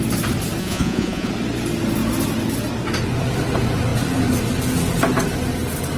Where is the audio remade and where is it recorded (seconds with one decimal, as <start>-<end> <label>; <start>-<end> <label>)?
0.0-0.6 recorded; 0.6-1.3 remade; 1.3-6.0 recorded